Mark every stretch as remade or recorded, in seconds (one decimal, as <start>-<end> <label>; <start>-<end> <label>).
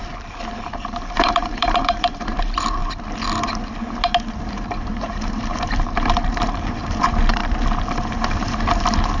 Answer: 0.0-0.5 recorded; 0.5-2.8 remade; 2.8-4.4 recorded; 4.4-7.4 remade; 7.4-7.9 recorded; 7.9-9.2 remade